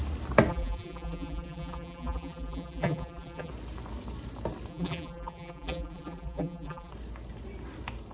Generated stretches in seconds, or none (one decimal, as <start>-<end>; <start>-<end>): 0.5-3.5; 4.7-6.9